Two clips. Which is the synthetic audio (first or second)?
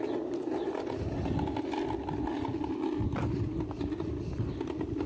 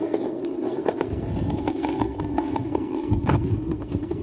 second